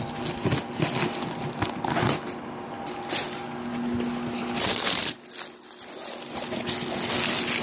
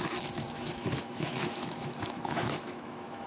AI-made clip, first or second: second